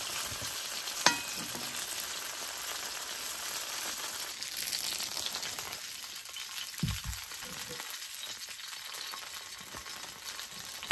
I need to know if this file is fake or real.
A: real